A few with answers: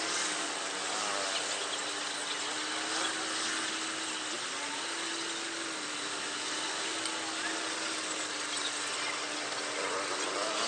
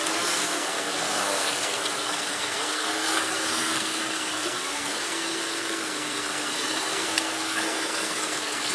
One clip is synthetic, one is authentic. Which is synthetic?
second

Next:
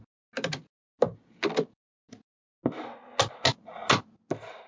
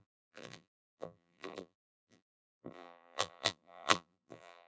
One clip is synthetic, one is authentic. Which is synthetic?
second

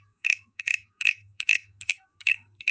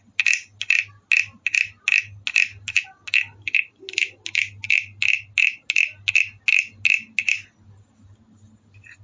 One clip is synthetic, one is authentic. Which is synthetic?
first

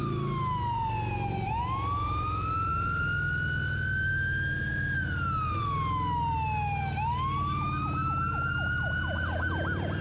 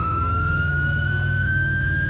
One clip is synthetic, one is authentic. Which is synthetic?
second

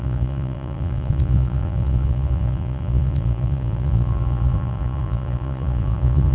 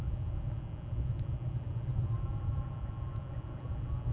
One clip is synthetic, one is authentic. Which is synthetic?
first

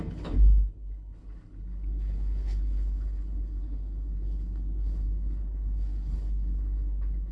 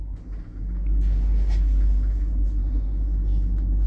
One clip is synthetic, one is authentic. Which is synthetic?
first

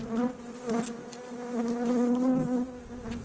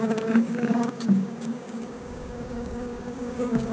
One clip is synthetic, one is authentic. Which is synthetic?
second